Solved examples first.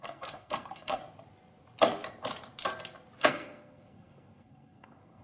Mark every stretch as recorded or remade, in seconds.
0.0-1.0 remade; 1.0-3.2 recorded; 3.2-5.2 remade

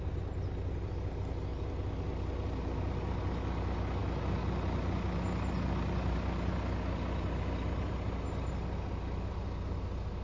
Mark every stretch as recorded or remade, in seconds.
0.0-10.2 recorded

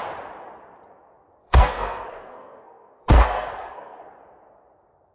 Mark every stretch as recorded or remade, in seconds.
0.0-1.4 recorded; 1.4-4.1 remade; 4.1-5.1 recorded

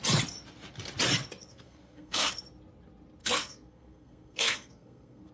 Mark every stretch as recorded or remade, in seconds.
0.0-1.5 recorded; 1.5-2.3 remade; 2.3-3.2 recorded; 3.2-5.3 remade

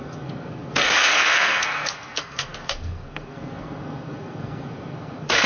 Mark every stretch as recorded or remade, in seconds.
0.0-5.5 remade

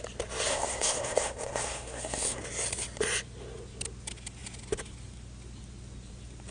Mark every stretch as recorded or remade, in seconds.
0.0-0.5 recorded; 0.5-2.4 remade; 2.4-6.5 recorded

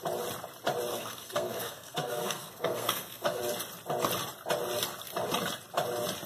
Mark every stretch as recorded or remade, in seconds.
0.0-0.9 recorded; 0.9-3.4 remade; 3.4-6.3 recorded